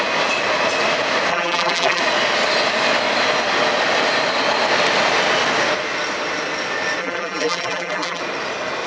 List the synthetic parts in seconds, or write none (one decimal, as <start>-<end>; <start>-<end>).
1.3-2.0; 7.0-8.2